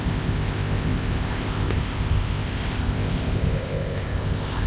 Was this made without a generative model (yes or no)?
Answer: no